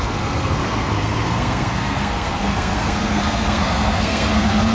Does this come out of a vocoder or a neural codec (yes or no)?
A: yes